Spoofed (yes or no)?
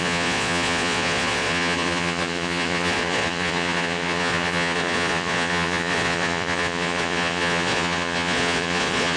yes